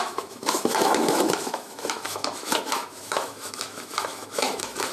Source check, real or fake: fake